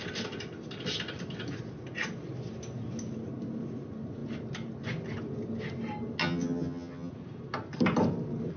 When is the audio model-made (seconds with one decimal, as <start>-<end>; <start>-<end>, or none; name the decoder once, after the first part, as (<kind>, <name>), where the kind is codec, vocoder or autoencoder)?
6.2-7.1 (vocoder, HiFi-GAN)